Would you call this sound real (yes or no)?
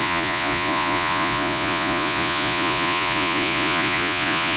no